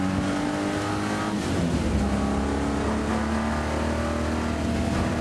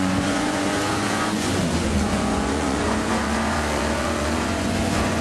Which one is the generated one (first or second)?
second